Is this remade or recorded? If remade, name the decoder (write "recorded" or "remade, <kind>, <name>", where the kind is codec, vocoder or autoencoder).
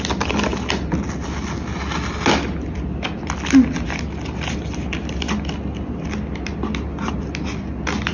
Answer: recorded